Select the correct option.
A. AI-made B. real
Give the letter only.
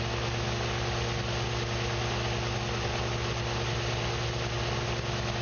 B